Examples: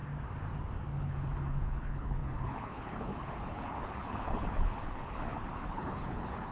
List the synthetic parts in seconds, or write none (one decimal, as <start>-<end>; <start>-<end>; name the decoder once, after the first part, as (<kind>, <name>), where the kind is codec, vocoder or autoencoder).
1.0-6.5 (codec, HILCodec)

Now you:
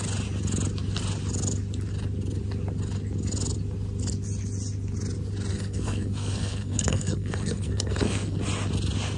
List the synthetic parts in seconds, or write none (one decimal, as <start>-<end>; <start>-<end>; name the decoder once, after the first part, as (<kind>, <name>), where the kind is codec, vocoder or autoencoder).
5.5-8.4 (codec, SNAC)

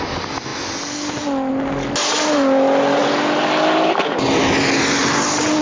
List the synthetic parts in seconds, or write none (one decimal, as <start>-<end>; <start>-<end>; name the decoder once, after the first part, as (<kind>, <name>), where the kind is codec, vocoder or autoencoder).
none

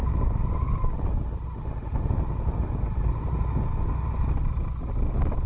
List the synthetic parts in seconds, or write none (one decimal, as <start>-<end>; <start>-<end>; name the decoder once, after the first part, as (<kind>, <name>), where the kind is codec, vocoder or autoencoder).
none